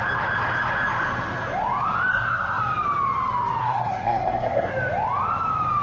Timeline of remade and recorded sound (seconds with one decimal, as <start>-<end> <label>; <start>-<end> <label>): 0.0-2.1 recorded; 2.1-2.6 remade; 2.6-3.6 recorded; 3.6-4.7 remade; 4.7-5.8 recorded